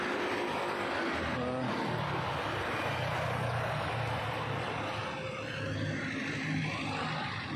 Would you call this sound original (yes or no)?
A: yes